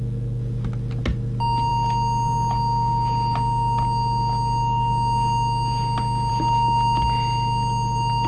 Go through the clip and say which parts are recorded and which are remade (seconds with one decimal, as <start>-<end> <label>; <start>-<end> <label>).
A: 0.0-8.3 recorded